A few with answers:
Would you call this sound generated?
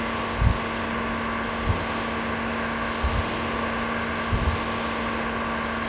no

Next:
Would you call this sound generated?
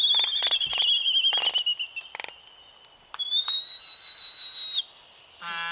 no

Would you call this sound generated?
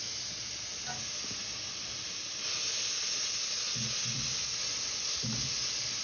no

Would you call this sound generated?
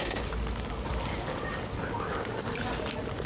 no